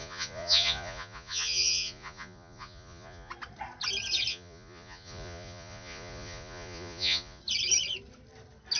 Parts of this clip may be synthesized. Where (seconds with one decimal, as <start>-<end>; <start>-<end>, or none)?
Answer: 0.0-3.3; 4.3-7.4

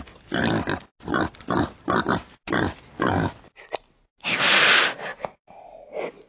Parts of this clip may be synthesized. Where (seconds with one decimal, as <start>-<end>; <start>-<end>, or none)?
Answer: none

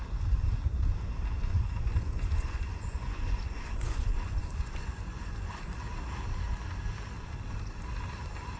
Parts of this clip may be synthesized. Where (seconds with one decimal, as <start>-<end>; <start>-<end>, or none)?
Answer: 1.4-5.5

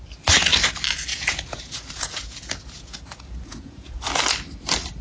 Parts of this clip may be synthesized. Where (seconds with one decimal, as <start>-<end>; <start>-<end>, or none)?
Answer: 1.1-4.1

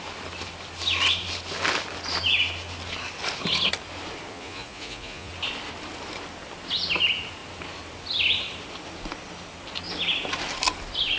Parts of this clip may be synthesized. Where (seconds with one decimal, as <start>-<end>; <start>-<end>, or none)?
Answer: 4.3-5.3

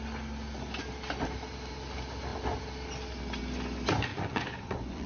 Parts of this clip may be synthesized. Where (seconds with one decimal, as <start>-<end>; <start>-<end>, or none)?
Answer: 4.1-5.1